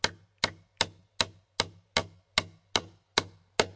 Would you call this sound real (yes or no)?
yes